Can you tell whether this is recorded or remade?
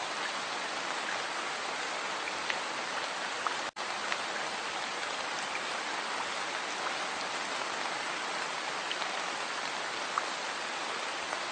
recorded